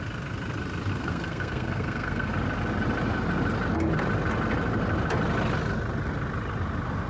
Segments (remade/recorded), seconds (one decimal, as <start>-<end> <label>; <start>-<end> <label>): 0.0-0.9 recorded; 0.9-2.3 remade; 2.3-7.1 recorded